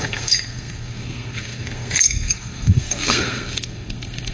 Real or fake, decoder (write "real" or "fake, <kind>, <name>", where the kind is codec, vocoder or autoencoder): fake, codec, SNAC